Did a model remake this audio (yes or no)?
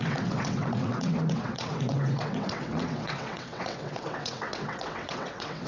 yes